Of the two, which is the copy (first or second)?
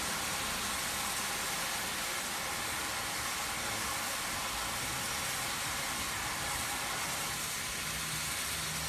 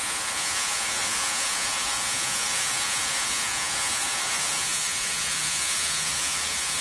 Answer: second